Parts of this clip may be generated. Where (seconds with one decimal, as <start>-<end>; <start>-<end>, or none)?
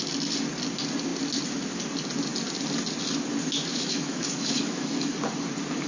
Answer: 3.7-5.1